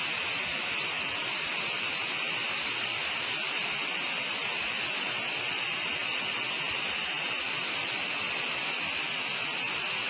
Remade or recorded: remade